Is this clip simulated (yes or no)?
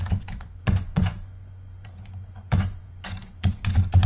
yes